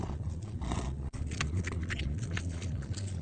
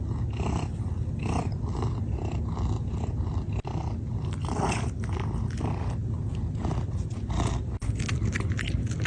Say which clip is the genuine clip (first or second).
second